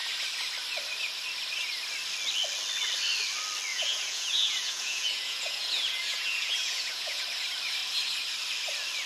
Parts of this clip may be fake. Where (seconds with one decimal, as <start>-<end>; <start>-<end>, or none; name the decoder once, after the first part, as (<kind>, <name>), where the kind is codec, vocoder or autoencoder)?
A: 3.7-7.2 (vocoder, Vocos)

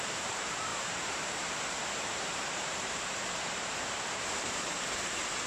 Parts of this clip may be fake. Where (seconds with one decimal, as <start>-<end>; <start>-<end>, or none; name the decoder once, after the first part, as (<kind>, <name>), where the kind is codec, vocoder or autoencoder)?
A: 0.0-5.5 (vocoder, BigVGAN v2)

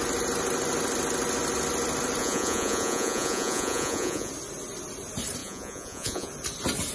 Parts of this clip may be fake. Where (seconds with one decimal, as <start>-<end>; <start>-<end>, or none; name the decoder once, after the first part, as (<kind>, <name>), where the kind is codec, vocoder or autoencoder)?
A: 2.2-4.3 (vocoder, Vocos); 5.4-6.3

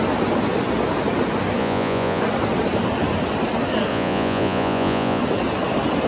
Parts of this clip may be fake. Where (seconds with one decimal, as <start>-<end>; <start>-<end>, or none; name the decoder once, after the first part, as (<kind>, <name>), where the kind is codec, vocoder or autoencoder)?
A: 1.6-2.2 (vocoder, Vocos); 3.9-5.2